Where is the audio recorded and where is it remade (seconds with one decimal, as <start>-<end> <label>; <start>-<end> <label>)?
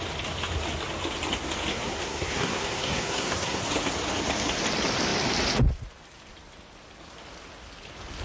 0.0-1.7 recorded; 1.7-3.6 remade; 3.6-8.2 recorded